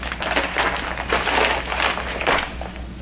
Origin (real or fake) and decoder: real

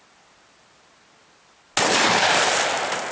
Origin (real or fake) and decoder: real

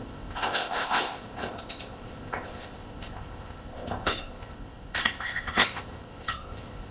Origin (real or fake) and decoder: fake, codec, ZipCodec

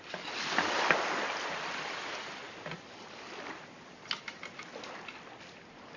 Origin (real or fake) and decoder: real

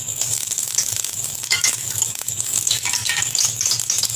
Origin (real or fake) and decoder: fake, codec, DAC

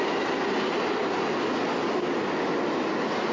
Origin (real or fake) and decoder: real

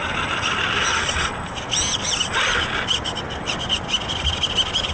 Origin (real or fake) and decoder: real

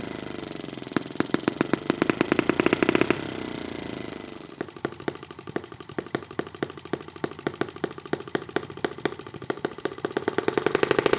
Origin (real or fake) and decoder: real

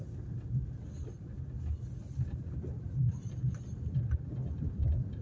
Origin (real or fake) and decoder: real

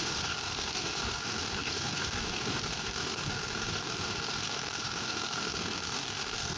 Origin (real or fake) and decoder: fake, codec, DAC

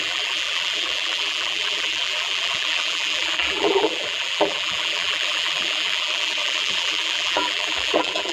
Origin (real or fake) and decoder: fake, vocoder, BigVGAN v2